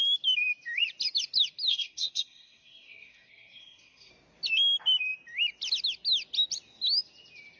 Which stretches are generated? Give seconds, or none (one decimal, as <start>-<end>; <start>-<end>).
1.7-4.1